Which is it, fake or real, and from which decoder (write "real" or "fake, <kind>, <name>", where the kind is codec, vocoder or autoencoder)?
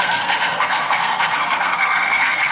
fake, codec, SNAC